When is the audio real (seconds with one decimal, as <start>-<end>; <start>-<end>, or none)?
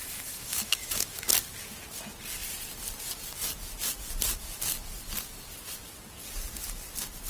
1.2-7.3